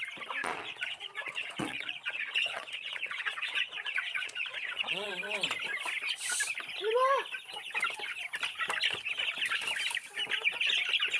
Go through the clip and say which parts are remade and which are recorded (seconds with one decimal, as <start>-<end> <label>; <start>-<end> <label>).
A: 0.0-0.4 recorded; 0.4-5.1 remade; 5.1-11.2 recorded